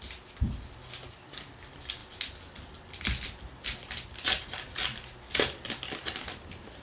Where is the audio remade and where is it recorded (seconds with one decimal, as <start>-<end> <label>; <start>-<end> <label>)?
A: 0.0-6.8 recorded